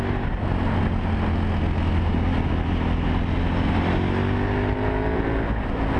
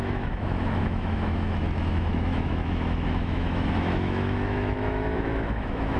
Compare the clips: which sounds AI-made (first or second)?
second